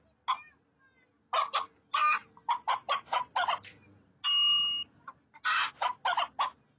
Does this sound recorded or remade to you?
recorded